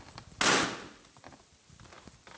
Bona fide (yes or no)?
yes